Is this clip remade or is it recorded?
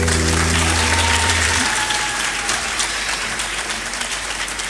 remade